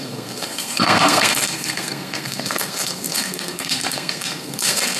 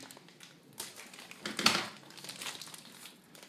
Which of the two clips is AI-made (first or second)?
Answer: first